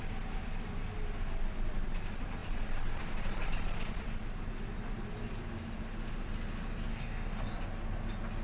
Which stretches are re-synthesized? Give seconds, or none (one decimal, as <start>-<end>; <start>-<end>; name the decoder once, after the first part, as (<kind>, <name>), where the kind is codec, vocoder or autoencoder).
6.9-7.4 (codec, DAC)